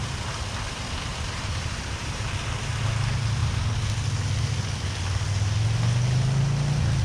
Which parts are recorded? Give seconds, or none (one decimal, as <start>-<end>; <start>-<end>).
0.0-1.1; 2.2-7.0